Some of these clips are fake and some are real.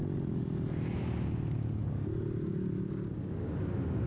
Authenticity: real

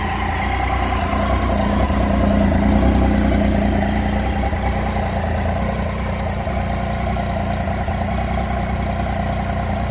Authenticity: real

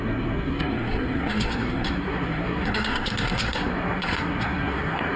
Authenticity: fake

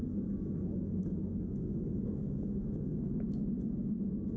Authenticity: fake